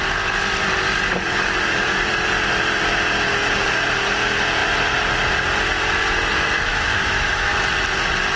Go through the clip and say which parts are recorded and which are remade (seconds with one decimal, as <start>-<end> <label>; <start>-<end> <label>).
0.0-6.7 recorded; 6.7-7.5 remade; 7.5-8.4 recorded